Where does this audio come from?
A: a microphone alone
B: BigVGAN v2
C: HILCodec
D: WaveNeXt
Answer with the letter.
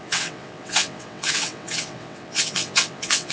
D